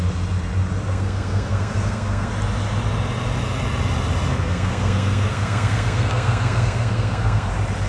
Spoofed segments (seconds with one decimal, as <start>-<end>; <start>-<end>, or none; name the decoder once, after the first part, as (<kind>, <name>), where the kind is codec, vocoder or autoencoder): 0.9-2.3 (codec, SNAC); 4.3-7.5